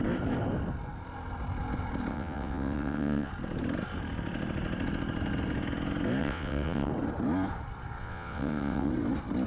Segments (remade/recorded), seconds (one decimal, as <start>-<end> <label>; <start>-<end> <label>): 0.0-2.1 recorded; 2.1-3.3 remade; 3.3-6.2 recorded; 6.2-6.9 remade; 6.9-8.0 recorded; 8.0-8.9 remade; 8.9-9.5 recorded